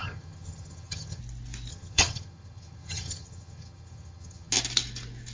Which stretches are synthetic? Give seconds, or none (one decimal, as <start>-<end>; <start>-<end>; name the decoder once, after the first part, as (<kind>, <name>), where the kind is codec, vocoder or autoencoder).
0.0-1.2 (vocoder, HiFi-GAN); 1.7-4.5